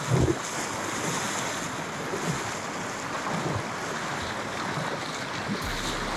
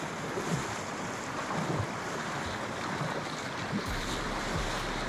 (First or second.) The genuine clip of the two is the first